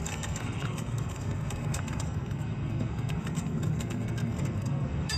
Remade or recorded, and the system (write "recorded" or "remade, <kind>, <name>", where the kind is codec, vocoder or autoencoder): remade, codec, SNAC